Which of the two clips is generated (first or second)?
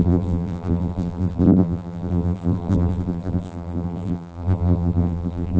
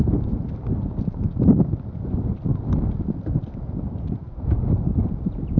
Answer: first